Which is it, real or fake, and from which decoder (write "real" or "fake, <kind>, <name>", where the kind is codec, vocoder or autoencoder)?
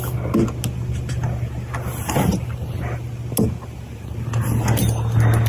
real